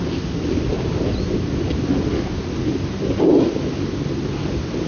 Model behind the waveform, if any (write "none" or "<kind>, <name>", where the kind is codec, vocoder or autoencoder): none